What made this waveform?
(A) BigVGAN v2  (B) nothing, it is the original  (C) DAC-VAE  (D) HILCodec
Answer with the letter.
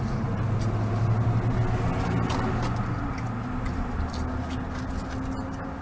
B